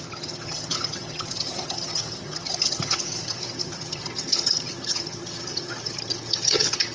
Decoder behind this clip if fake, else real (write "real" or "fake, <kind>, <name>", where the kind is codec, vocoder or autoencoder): fake, vocoder, HiFi-GAN